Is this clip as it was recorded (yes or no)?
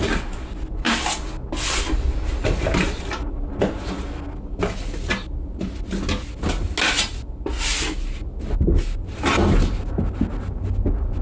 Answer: yes